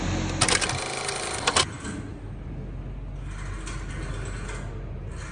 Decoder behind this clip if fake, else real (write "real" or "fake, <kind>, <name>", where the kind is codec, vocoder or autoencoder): real